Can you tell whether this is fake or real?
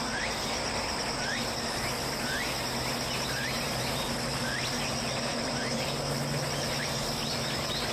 real